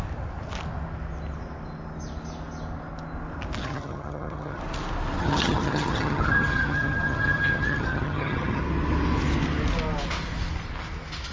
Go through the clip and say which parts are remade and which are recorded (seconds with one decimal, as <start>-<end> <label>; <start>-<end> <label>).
0.0-3.6 recorded; 3.6-4.6 remade; 4.6-5.2 recorded; 5.2-8.6 remade; 8.6-11.3 recorded